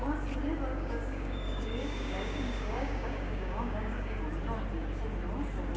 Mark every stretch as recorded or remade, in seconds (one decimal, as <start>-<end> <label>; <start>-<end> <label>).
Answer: 0.0-0.7 recorded; 0.7-4.2 remade; 4.2-5.8 recorded